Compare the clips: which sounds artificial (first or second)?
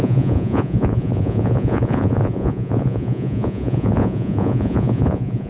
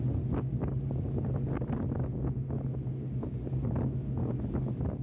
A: first